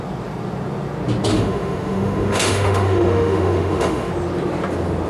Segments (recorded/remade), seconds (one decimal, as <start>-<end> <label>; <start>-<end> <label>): 0.0-1.3 recorded; 1.3-4.1 remade; 4.1-5.1 recorded